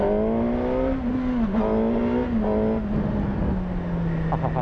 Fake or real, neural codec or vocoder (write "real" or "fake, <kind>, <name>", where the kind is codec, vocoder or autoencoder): real